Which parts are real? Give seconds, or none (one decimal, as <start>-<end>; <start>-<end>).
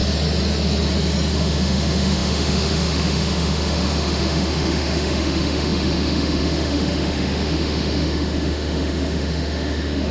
0.0-1.3